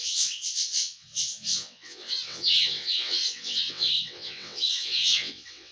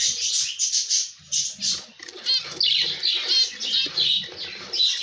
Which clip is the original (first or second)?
second